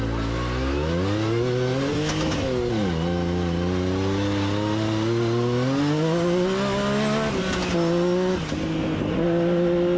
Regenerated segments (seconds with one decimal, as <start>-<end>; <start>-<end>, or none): none